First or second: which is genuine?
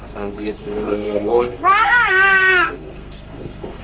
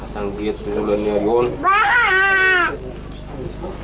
second